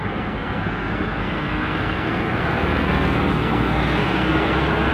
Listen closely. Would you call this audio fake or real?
fake